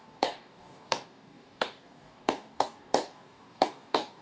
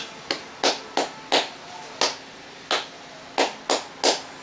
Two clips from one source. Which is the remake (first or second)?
first